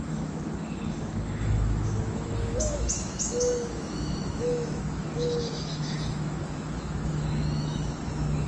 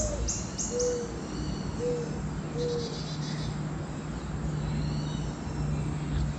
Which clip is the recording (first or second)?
second